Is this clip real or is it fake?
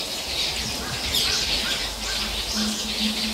real